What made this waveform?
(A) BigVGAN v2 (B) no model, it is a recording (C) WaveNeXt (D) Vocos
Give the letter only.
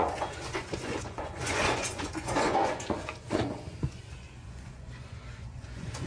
D